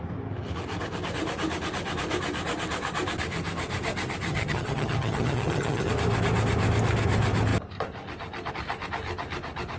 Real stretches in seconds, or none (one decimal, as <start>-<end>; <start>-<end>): 0.0-4.3; 5.9-9.8